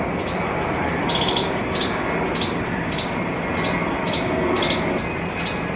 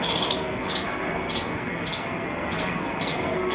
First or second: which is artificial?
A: second